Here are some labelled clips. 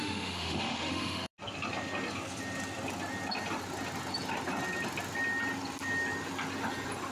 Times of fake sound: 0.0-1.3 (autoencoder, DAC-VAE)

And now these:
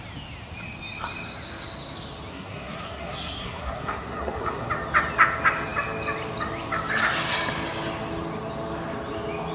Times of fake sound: 2.3-4.7 (codec, SNAC)

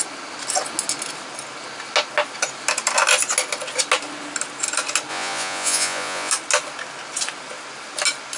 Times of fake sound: 5.1-6.3 (vocoder, Vocos)